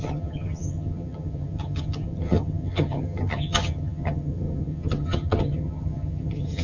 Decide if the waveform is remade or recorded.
remade